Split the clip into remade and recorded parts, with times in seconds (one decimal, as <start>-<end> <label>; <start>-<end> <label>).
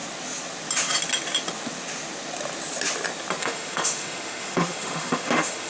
0.0-3.4 recorded; 3.4-5.7 remade